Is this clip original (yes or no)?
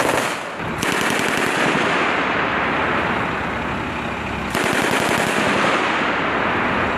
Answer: yes